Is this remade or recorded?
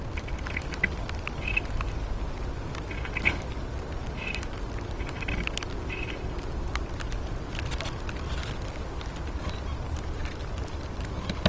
recorded